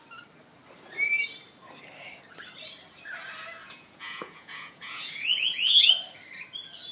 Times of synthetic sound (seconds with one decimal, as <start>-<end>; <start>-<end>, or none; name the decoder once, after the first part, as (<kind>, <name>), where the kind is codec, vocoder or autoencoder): 3.6-5.9 (vocoder, Vocos)